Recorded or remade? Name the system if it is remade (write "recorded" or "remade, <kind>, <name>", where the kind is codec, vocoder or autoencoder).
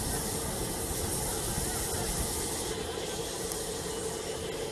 recorded